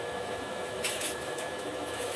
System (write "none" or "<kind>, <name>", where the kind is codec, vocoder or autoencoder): autoencoder, DAC-VAE